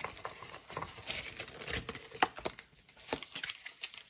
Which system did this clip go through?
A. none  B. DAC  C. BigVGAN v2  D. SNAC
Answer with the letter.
A